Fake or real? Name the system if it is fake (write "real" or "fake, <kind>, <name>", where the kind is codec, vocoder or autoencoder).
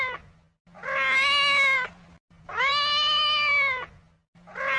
real